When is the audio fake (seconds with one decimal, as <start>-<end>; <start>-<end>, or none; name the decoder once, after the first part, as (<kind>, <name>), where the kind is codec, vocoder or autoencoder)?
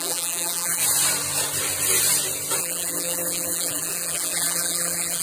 0.0-0.8 (vocoder, BigVGAN v2); 2.6-5.2